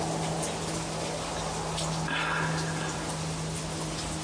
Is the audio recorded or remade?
recorded